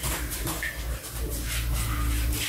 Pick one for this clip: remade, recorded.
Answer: recorded